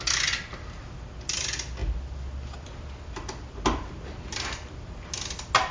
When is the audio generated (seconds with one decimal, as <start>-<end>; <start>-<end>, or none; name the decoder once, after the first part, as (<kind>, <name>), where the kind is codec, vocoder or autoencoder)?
none